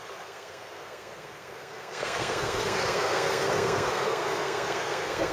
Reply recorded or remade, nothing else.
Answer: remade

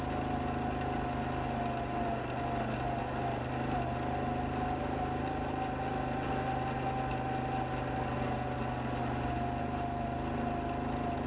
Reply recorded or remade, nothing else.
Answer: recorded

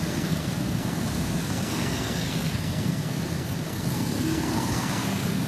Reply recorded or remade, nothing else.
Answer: remade